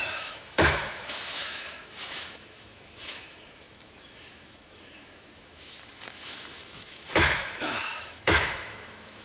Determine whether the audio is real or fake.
fake